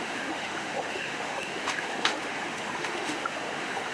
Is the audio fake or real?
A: fake